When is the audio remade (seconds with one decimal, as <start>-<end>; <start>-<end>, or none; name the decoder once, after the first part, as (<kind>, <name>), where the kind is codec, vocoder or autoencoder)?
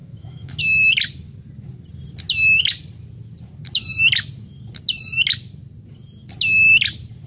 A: 0.0-0.6 (autoencoder, DAC-VAE)